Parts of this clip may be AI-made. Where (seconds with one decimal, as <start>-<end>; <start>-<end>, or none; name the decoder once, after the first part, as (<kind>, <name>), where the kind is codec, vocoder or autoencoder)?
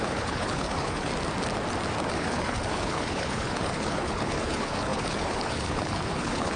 0.0-1.1 (codec, HILCodec); 2.1-6.6